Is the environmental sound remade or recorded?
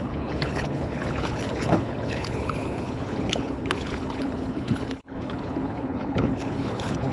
remade